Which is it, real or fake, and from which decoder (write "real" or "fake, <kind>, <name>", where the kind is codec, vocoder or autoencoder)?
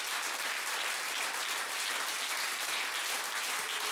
real